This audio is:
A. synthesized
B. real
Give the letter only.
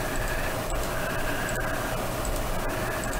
B